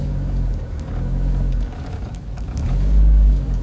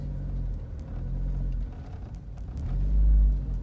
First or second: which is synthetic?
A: first